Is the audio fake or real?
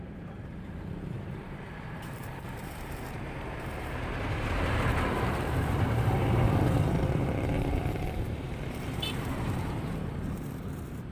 fake